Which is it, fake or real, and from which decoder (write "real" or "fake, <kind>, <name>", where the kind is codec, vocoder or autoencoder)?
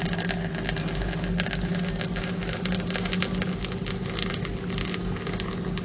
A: real